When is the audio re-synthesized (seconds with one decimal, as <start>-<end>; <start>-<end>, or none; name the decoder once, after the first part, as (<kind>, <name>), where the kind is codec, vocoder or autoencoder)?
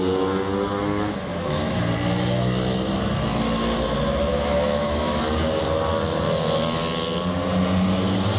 1.3-1.9 (autoencoder, DAC-VAE); 4.3-5.2